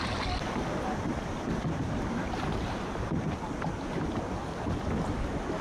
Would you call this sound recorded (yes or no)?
yes